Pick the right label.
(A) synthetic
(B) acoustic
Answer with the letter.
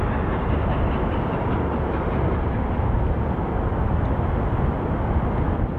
B